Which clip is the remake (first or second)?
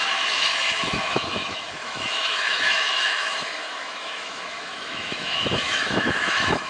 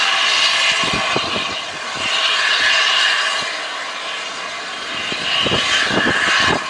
first